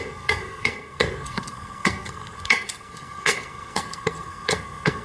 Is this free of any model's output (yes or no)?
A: no